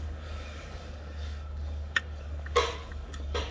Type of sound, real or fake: fake